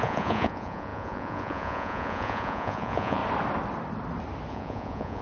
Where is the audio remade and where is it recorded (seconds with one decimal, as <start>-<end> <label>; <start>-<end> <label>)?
0.0-3.2 remade; 3.2-4.5 recorded; 4.5-5.2 remade